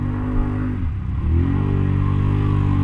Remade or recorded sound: recorded